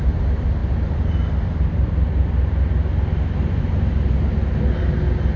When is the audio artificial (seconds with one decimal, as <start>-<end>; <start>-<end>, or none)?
0.6-3.6